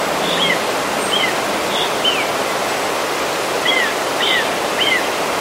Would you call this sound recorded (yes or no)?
yes